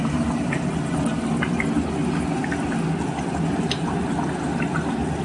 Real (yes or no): yes